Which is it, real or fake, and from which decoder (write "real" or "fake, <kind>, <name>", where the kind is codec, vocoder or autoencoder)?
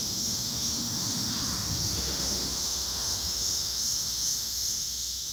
fake, autoencoder, DAC-VAE